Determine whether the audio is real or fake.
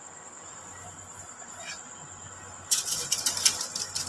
real